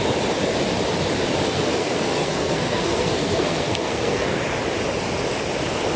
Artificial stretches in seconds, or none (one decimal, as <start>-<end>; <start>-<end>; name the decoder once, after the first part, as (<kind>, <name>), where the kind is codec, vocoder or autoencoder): 1.4-4.4 (codec, SNAC)